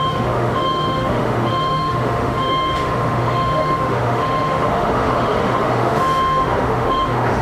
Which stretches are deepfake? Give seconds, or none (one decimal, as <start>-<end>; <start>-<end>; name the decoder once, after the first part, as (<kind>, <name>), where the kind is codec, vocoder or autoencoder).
0.0-7.4 (autoencoder, DAC-VAE)